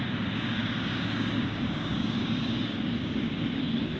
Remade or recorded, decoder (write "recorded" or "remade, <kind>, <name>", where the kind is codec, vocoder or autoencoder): remade, codec, DAC